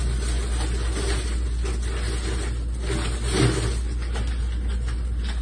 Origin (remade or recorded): recorded